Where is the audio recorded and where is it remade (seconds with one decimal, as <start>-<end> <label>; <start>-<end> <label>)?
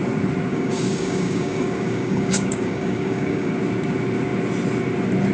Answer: 0.0-0.5 recorded; 0.5-3.5 remade; 3.5-5.3 recorded